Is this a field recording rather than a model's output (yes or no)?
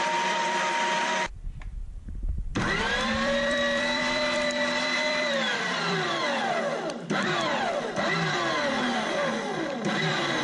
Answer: no